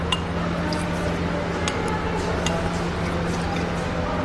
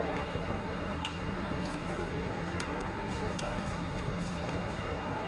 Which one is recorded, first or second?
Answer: first